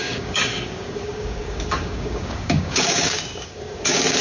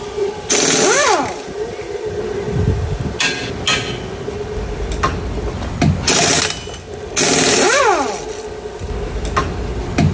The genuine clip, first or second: second